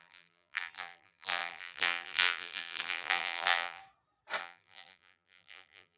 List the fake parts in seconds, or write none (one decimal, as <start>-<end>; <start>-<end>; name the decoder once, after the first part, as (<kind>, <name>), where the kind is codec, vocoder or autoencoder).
0.0-3.8 (vocoder, BigVGAN v2); 4.4-6.0